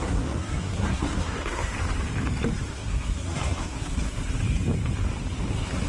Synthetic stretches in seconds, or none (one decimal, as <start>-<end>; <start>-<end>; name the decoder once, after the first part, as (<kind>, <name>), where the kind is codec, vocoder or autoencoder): 0.0-1.7 (codec, SNAC); 2.7-4.2; 5.5-5.9